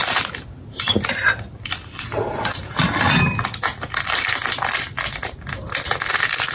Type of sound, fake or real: real